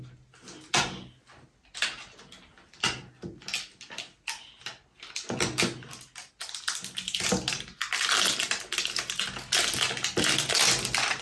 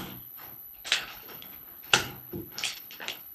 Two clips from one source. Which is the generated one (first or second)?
second